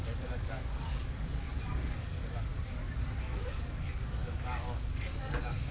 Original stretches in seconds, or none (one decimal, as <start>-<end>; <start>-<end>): 2.5-3.2

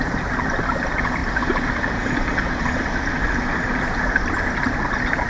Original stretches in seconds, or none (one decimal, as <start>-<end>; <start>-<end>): 0.0-5.3

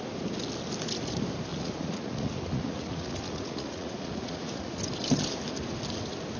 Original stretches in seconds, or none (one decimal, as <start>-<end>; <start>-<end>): 0.0-1.5; 4.8-6.4

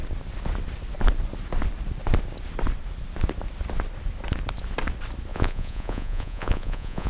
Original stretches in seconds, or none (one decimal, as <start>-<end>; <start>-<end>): 0.0-5.3

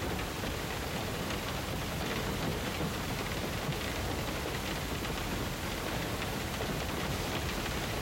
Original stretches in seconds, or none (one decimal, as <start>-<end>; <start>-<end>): 0.0-2.5; 3.1-8.0

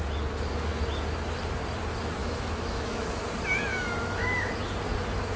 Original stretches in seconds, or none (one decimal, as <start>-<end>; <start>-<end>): 0.0-2.2; 3.2-3.7; 4.5-5.4

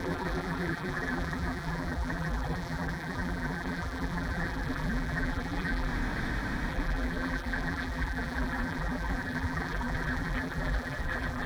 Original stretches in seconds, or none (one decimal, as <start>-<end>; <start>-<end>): 5.9-6.7